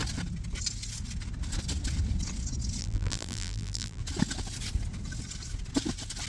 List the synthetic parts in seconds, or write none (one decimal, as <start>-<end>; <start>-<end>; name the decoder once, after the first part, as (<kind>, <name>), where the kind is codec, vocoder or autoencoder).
2.8-4.0 (vocoder, BigVGAN v2)